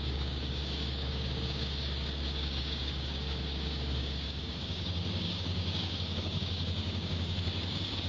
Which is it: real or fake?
fake